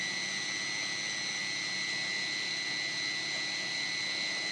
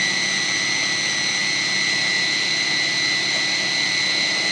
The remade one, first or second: second